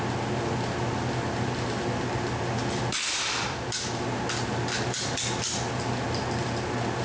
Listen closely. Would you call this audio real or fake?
real